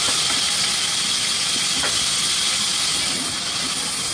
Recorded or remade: recorded